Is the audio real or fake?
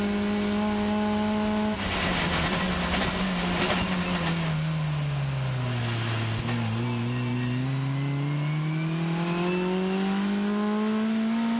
real